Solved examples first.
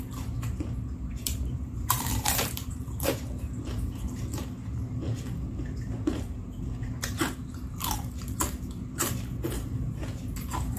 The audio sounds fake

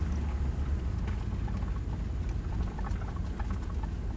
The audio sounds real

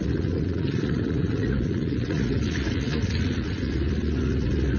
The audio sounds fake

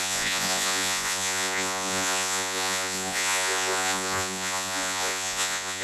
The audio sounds fake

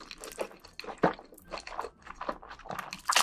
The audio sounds real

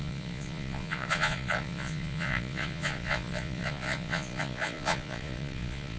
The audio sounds fake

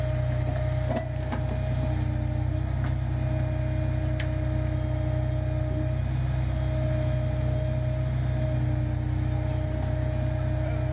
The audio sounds real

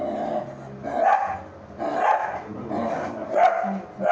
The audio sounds real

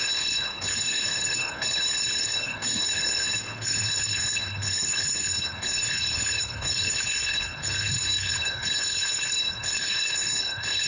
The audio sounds fake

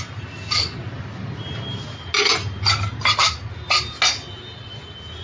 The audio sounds real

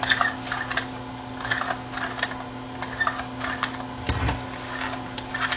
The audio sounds real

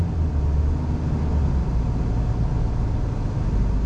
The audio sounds real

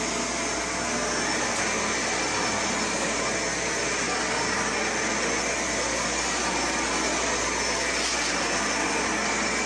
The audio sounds real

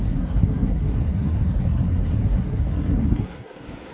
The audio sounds fake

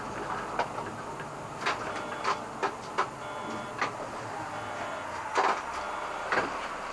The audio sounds real